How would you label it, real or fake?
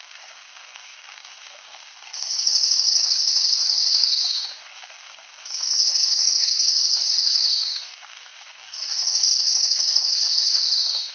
fake